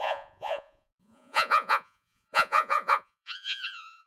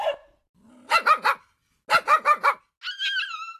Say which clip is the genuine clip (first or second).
second